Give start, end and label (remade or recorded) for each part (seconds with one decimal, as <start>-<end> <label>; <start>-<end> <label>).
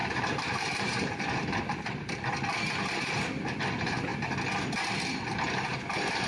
0.0-2.1 remade; 2.1-6.3 recorded